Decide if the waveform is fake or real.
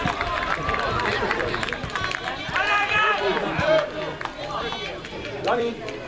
fake